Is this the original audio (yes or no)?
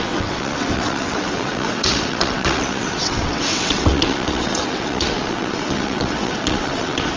no